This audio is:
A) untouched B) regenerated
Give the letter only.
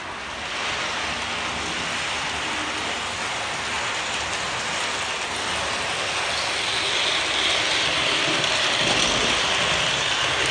A